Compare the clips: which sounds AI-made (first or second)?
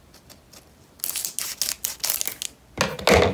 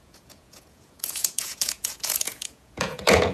second